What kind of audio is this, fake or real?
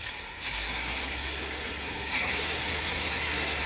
fake